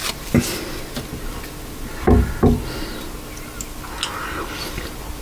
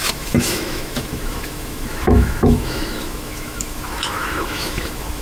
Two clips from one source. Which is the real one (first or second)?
first